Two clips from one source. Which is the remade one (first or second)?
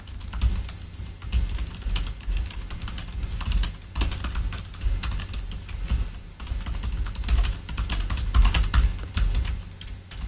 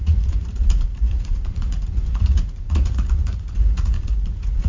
second